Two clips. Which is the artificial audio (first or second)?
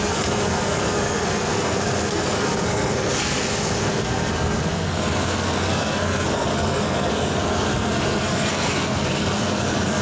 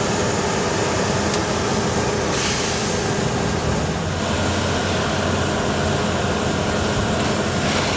first